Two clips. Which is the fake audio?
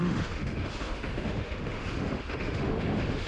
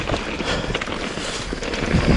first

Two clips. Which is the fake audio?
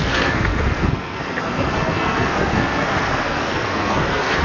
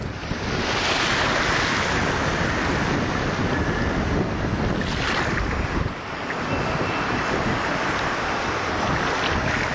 first